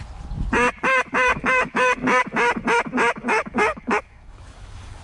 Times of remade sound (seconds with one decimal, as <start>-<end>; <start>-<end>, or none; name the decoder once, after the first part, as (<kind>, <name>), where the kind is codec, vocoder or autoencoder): 1.3-2.2 (codec, DAC); 3.2-5.0